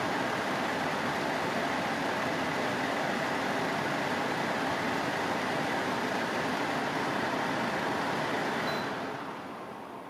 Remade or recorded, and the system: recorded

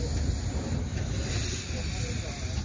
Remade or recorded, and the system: recorded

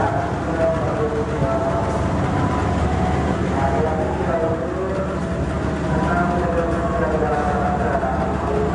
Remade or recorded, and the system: recorded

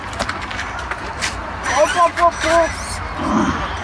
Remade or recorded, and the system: recorded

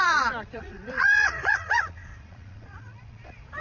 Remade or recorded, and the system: remade, vocoder, Vocos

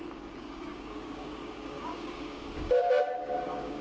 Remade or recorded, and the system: remade, codec, DAC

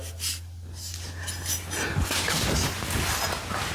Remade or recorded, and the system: recorded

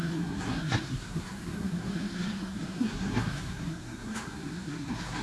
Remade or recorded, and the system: remade, codec, SNAC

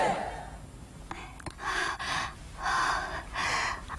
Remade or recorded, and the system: recorded